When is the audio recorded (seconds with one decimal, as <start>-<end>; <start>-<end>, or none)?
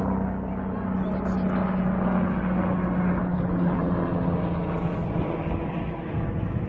0.0-3.2; 3.8-6.7